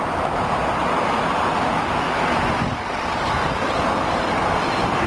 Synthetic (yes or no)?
no